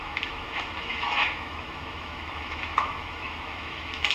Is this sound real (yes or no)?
no